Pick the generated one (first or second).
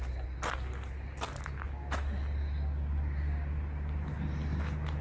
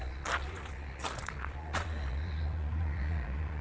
second